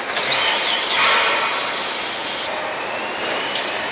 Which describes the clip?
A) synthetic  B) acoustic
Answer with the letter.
B